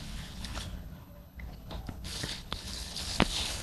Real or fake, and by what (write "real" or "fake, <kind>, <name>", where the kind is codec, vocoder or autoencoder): fake, codec, HILCodec